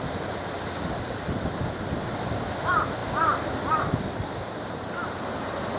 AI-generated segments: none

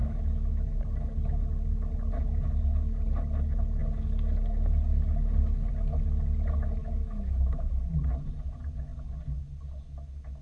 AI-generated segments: 0.0-0.8 (autoencoder, DAC-VAE); 6.8-7.7

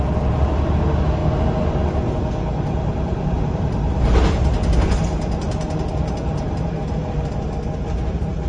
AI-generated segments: none

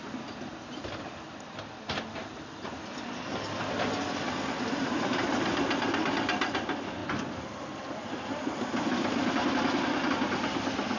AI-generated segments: 7.0-10.1 (vocoder, BigVGAN v2)

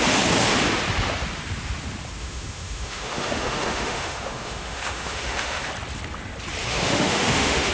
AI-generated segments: 2.2-5.7 (autoencoder, DAC-VAE); 6.6-7.7

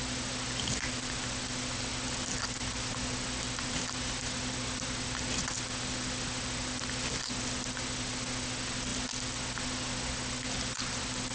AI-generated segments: none

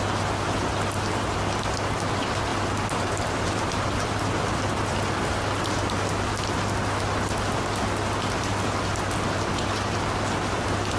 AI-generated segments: 2.5-5.0 (vocoder, BigVGAN v2)